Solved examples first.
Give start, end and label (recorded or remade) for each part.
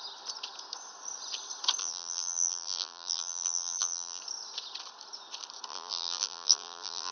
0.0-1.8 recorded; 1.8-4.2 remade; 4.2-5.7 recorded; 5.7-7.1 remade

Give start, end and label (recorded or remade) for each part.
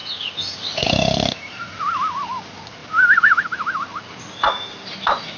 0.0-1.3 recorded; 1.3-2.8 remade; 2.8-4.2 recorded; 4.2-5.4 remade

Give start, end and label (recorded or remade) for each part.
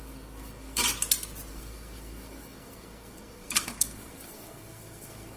0.0-0.8 remade; 0.8-1.5 recorded; 1.5-5.4 remade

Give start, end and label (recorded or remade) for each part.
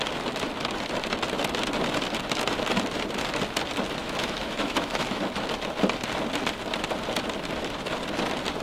0.0-4.0 recorded; 4.0-5.2 remade; 5.2-8.6 recorded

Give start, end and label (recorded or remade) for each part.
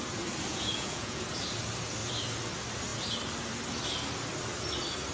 0.0-0.5 recorded; 0.5-1.2 remade; 1.2-5.1 recorded